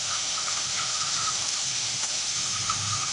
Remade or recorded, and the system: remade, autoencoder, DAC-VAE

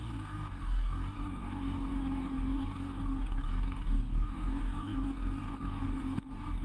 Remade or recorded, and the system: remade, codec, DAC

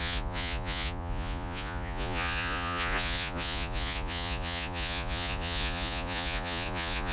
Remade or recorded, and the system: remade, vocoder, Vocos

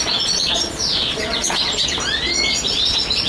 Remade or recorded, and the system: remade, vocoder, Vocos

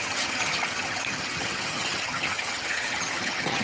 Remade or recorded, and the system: remade, vocoder, HiFi-GAN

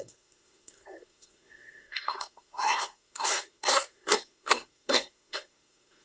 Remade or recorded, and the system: remade, codec, SNAC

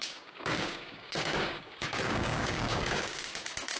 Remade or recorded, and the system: remade, codec, DAC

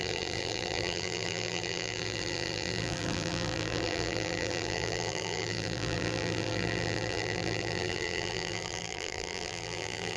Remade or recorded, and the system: remade, vocoder, BigVGAN v2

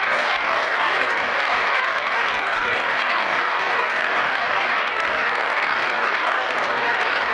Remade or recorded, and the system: remade, codec, DAC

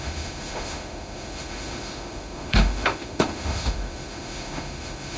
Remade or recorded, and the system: remade, autoencoder, DAC-VAE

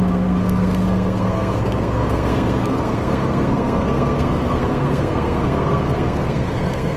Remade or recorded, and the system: remade, codec, SNAC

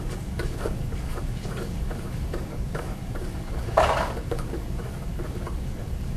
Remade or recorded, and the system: remade, codec, DAC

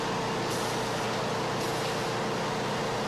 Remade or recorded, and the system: recorded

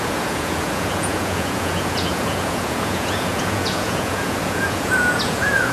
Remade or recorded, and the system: remade, vocoder, Vocos